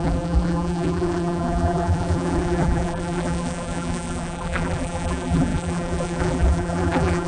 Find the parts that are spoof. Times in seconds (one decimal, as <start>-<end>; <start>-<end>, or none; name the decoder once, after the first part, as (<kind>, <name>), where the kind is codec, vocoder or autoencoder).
0.0-7.3 (vocoder, BigVGAN v2)